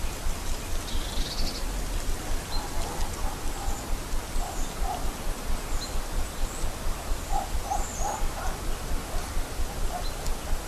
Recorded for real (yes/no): yes